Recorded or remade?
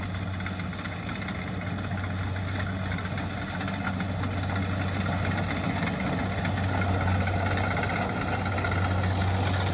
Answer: recorded